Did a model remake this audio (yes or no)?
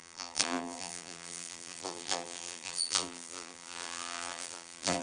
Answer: yes